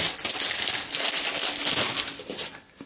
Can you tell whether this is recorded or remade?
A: recorded